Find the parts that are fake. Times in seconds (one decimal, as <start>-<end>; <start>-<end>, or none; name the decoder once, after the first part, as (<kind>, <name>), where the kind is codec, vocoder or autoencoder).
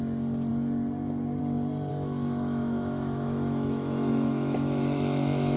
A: 1.9-5.6 (autoencoder, DAC-VAE)